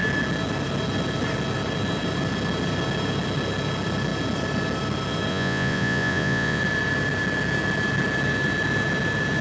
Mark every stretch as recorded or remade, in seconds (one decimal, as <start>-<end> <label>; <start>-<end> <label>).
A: 0.0-5.3 recorded; 5.3-6.6 remade; 6.6-9.4 recorded